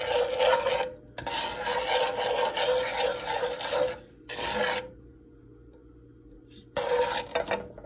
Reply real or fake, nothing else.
real